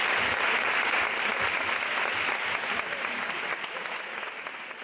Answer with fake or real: real